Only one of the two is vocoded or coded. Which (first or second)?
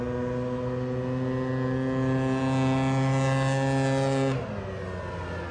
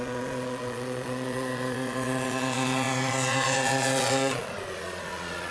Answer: second